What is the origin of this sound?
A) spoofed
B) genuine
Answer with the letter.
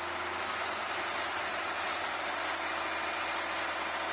B